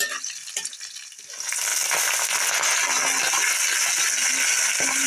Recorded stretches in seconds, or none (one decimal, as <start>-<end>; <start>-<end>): 0.0-5.1